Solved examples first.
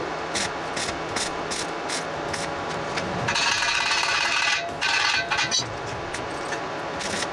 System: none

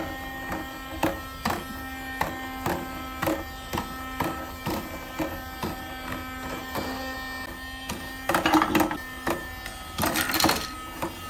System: none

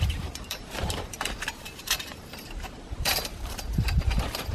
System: vocoder, BigVGAN v2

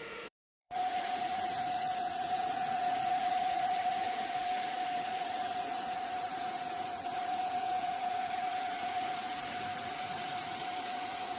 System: vocoder, Vocos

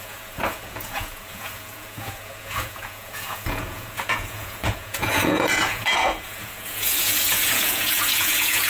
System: vocoder, Vocos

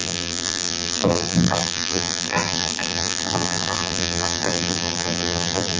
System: vocoder, BigVGAN v2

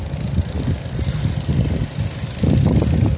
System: none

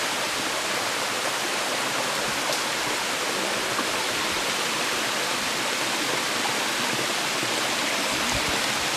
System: none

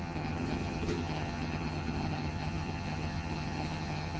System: vocoder, HiFi-GAN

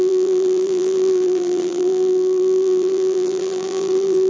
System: vocoder, BigVGAN v2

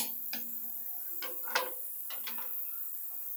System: none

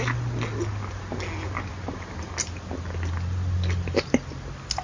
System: none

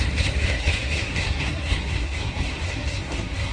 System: codec, SNAC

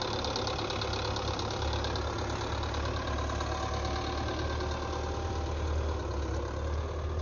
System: none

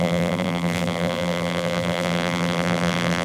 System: vocoder, BigVGAN v2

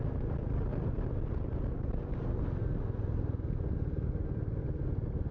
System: none